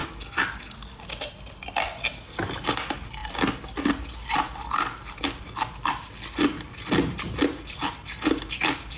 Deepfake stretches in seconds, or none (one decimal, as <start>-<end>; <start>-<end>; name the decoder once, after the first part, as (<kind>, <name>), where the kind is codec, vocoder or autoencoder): none